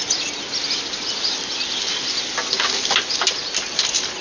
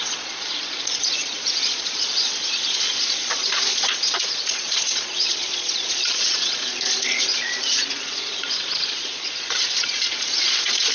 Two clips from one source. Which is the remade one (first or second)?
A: second